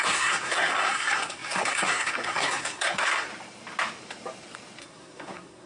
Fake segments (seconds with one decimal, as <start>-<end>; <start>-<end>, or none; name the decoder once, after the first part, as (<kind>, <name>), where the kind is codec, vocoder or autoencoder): 0.0-3.3 (codec, SNAC); 4.8-5.7